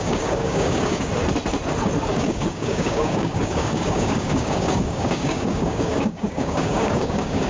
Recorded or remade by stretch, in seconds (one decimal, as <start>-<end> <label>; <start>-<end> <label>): 0.0-1.1 remade; 1.1-2.1 recorded; 2.1-7.5 remade

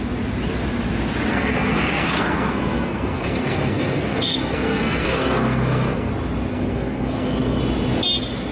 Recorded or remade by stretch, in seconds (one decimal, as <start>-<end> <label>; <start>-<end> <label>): 0.0-1.3 recorded; 1.3-6.1 remade; 6.1-6.5 recorded; 6.5-7.6 remade; 7.6-8.5 recorded

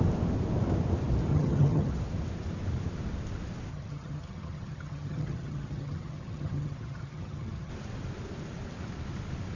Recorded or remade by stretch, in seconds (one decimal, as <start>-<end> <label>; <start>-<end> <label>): 0.0-1.3 recorded; 1.3-1.9 remade; 1.9-3.7 recorded; 3.7-7.7 remade; 7.7-9.6 recorded

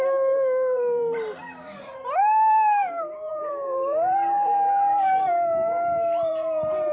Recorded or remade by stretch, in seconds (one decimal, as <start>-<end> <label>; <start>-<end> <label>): 0.0-6.9 remade

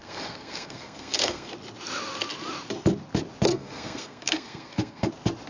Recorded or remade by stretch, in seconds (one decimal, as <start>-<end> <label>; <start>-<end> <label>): 0.0-1.5 remade; 1.5-3.5 recorded; 3.5-5.1 remade; 5.1-5.5 recorded